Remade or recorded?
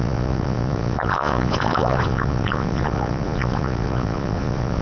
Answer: remade